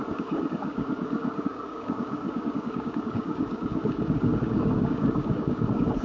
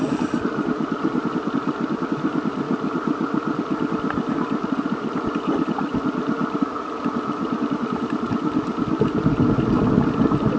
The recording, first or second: second